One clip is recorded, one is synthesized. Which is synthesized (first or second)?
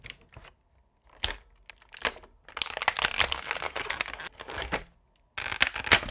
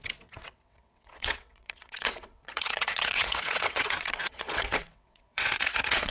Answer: second